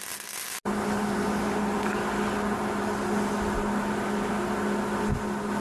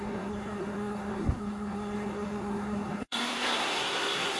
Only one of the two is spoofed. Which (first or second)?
second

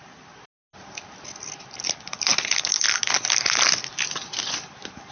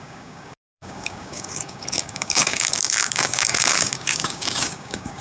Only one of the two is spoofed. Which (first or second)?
second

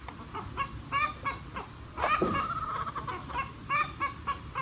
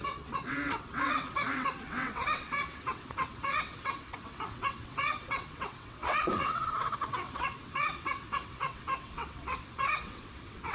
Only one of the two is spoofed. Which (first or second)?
second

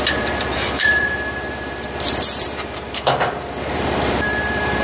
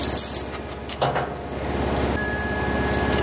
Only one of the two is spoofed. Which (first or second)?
first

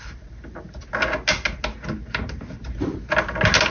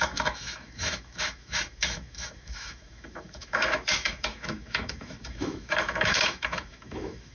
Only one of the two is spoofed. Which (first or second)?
second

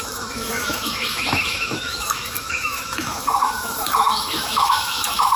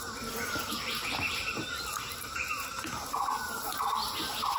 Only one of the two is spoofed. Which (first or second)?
first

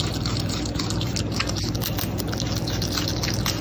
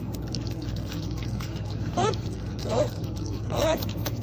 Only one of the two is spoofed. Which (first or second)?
second